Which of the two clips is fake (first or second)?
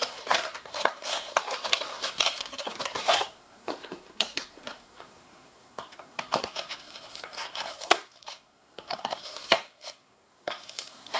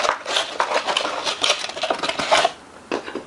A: first